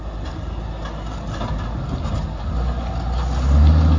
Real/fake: real